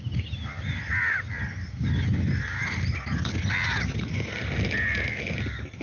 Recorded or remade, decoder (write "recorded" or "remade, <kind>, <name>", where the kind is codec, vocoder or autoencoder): recorded